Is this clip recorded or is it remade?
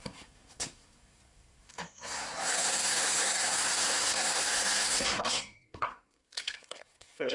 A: remade